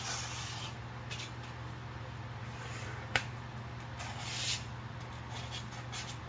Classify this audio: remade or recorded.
recorded